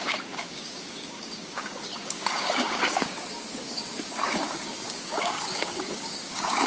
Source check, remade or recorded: remade